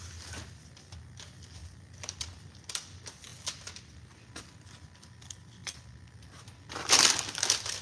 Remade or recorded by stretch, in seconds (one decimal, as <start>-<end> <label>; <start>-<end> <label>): 0.0-1.6 recorded; 1.6-2.6 remade; 2.6-7.8 recorded